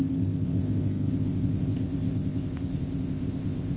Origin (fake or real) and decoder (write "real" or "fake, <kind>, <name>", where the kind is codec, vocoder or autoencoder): fake, codec, ZipCodec